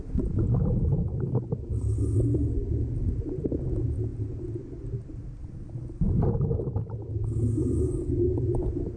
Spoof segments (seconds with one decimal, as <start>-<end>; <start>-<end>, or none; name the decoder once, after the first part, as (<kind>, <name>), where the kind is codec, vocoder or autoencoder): none